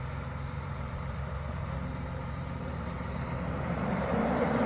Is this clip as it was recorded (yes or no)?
no